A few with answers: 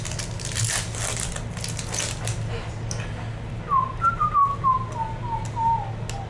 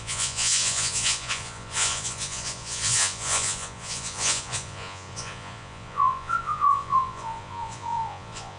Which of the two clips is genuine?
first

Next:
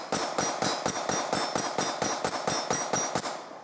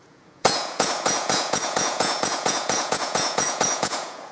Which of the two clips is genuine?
first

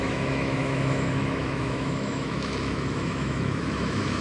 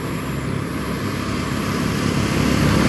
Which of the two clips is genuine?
second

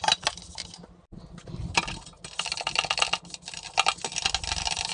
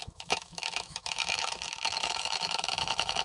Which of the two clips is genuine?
first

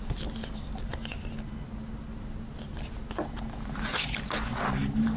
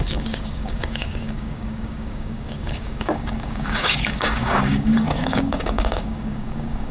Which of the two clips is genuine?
first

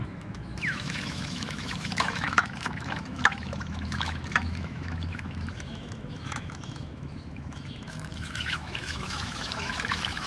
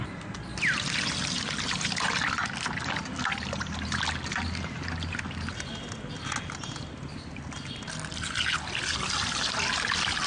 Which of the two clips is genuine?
second